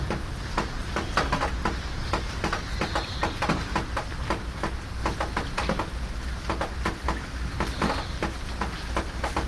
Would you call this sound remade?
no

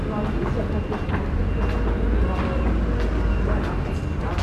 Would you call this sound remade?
no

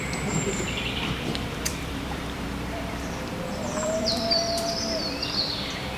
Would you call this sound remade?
yes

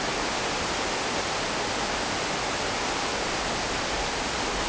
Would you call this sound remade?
no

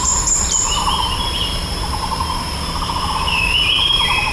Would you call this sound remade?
yes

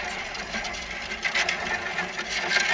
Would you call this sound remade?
no